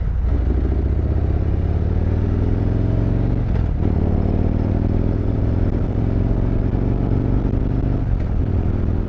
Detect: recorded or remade recorded